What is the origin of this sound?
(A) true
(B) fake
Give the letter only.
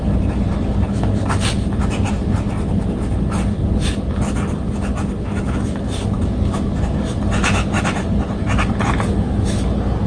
A